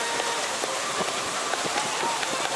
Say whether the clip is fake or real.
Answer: fake